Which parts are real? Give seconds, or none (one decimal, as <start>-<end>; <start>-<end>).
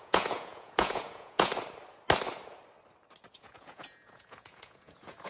1.5-3.3